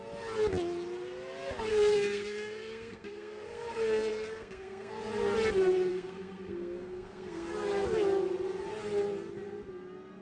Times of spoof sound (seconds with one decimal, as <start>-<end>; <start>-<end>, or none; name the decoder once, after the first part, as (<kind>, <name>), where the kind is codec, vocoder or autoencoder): 1.7-4.9 (codec, SNAC); 5.9-7.5